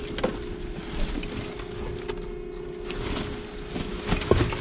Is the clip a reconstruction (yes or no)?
no